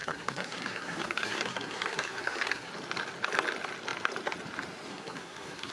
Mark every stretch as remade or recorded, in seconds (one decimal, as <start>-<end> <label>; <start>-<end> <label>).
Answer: 0.0-2.7 remade; 2.7-4.9 recorded; 4.9-5.7 remade

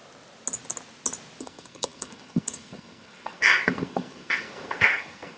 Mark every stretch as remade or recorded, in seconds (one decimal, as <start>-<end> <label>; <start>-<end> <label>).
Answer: 0.0-1.4 recorded; 1.4-5.4 remade

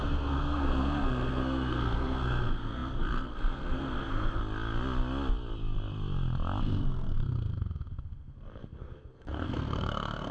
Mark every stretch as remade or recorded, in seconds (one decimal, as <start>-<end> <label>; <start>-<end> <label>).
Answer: 0.0-4.4 remade; 4.4-6.6 recorded; 6.6-10.3 remade

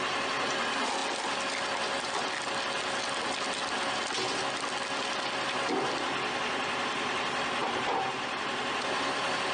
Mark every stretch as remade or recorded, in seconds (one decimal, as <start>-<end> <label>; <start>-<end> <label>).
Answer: 0.0-7.6 recorded; 7.6-8.5 remade; 8.5-9.5 recorded

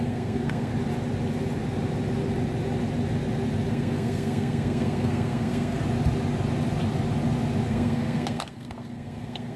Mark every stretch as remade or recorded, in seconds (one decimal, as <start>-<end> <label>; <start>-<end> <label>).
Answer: 0.0-0.7 remade; 0.7-3.7 recorded; 3.7-5.8 remade; 5.8-7.7 recorded; 7.7-9.6 remade